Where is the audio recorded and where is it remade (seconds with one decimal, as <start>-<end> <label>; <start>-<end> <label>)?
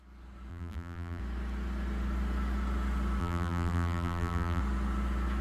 0.0-0.5 recorded; 0.5-1.2 remade; 1.2-3.2 recorded; 3.2-4.6 remade; 4.6-5.4 recorded